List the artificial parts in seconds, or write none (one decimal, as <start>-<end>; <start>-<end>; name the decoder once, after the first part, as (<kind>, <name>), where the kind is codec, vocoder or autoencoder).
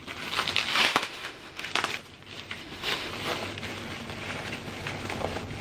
0.7-1.7 (autoencoder, DAC-VAE); 2.6-3.1